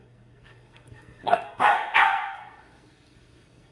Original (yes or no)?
no